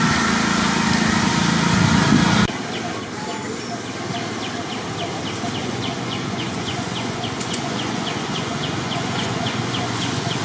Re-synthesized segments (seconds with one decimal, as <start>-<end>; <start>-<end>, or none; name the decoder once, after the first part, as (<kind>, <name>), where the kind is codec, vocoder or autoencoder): 5.6-10.4 (vocoder, Vocos)